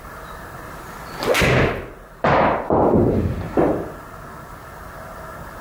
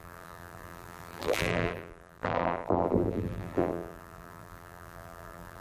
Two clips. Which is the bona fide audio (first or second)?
first